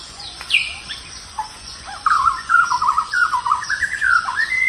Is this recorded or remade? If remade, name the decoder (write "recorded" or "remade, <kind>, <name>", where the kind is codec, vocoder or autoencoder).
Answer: remade, vocoder, Vocos